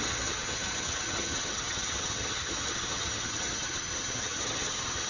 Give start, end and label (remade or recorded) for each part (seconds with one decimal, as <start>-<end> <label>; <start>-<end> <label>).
0.0-5.1 remade